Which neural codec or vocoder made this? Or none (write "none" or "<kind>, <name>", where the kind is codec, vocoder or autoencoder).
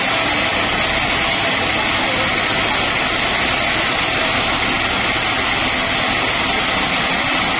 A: none